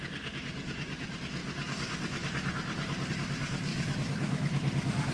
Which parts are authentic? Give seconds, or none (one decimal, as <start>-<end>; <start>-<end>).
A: 0.0-3.7